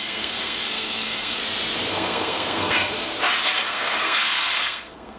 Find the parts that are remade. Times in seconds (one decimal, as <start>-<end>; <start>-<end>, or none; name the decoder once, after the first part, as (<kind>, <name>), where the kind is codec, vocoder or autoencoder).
0.0-1.4 (codec, SNAC); 1.9-3.1; 3.7-5.2